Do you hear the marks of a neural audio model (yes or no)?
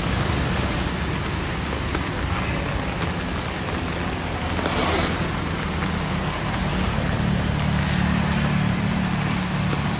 no